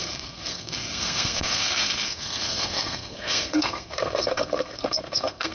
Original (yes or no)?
no